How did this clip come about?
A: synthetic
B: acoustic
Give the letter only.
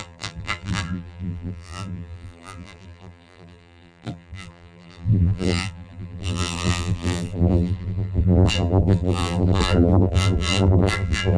A